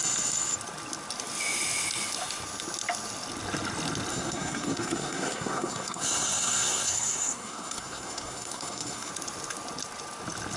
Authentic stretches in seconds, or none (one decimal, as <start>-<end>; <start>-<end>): 0.0-4.1; 9.1-10.6